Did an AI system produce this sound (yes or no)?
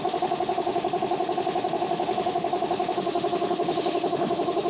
yes